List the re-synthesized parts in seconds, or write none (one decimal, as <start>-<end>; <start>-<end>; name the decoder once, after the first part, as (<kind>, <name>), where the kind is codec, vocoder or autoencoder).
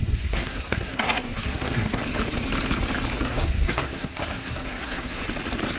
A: 0.0-2.0 (codec, SNAC); 3.2-5.2